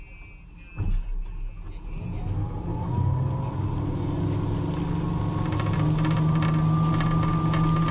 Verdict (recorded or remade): recorded